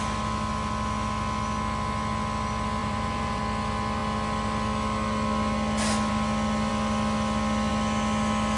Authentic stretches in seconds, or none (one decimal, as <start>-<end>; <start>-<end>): 0.0-2.8; 3.4-8.6